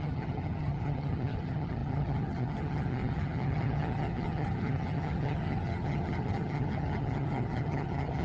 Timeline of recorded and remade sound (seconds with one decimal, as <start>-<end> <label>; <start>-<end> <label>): 0.0-8.2 remade